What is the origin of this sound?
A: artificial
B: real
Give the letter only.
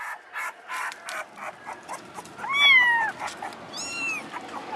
B